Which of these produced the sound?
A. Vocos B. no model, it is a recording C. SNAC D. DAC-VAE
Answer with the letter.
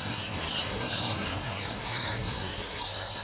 C